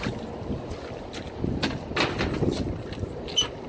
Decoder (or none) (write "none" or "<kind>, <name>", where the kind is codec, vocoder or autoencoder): none